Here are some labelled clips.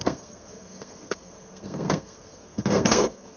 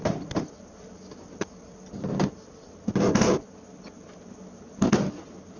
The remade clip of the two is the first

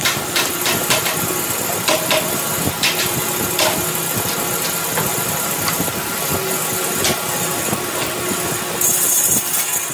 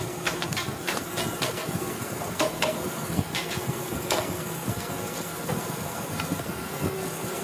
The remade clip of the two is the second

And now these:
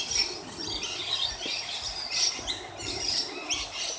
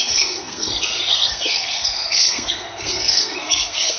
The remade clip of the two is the second